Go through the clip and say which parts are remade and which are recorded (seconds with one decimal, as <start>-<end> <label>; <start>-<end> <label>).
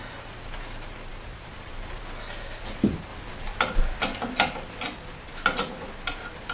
0.0-1.1 recorded; 1.1-2.0 remade; 2.0-6.5 recorded